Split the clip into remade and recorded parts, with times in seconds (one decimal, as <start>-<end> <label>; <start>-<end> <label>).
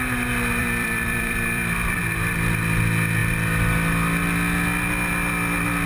0.0-0.6 recorded; 0.6-2.0 remade; 2.0-5.9 recorded